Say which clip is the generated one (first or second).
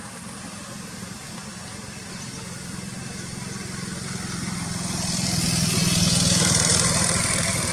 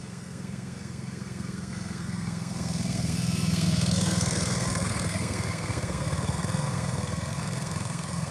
second